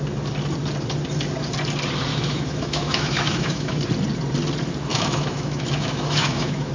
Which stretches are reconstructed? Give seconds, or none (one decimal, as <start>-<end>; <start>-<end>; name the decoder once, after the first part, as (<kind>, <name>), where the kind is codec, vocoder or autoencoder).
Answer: 2.1-3.8 (autoencoder, DAC-VAE); 4.9-6.7